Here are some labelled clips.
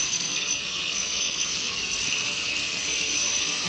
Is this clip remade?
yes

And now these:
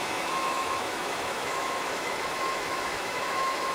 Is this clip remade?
yes